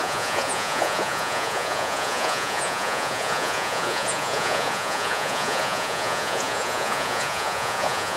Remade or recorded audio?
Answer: remade